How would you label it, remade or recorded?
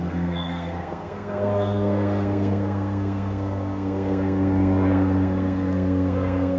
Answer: remade